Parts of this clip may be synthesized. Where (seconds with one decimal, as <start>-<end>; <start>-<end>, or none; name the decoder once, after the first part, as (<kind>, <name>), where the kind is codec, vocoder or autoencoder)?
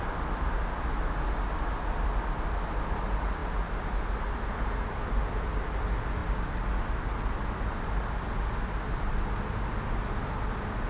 none